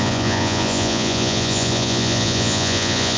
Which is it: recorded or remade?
remade